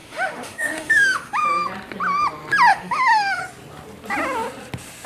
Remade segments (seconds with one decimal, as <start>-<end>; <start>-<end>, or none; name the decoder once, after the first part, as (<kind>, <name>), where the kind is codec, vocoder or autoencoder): 0.0-1.4 (autoencoder, DAC-VAE); 2.7-3.4